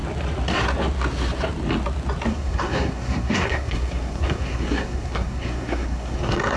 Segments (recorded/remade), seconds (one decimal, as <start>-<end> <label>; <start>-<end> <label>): 0.0-2.3 recorded; 2.3-6.6 remade